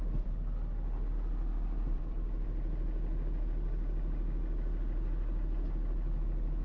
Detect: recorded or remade recorded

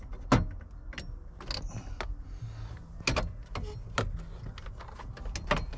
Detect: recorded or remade recorded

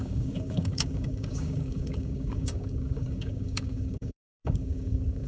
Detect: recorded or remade remade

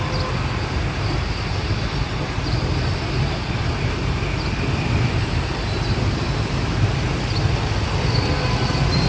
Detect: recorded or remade recorded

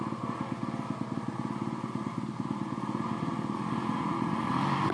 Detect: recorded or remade recorded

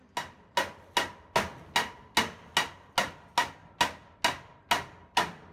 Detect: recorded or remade recorded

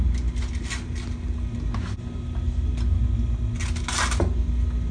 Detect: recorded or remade recorded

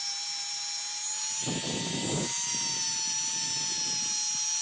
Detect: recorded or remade recorded